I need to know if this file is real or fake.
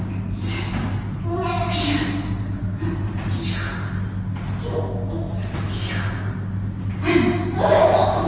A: real